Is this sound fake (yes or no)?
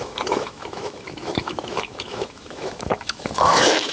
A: yes